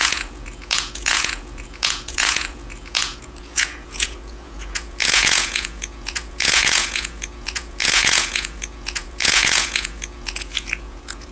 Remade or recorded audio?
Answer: remade